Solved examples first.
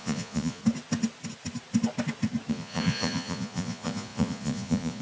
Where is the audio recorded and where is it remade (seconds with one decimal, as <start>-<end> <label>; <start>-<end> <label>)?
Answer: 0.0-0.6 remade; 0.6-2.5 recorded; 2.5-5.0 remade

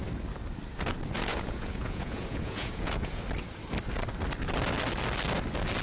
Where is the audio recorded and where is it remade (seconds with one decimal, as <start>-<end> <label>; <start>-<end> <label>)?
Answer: 0.0-1.3 recorded; 1.3-3.2 remade; 3.2-5.8 recorded

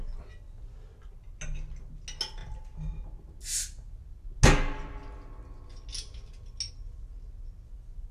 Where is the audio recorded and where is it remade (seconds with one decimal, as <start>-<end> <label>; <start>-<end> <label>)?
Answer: 0.0-8.1 recorded

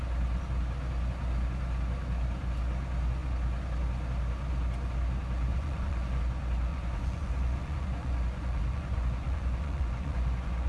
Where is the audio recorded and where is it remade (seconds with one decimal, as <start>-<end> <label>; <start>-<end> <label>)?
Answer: 0.0-5.5 recorded; 5.5-6.2 remade; 6.2-6.7 recorded; 6.7-10.7 remade